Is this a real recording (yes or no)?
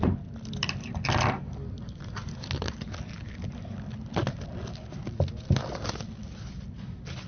yes